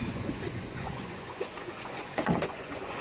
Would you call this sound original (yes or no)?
no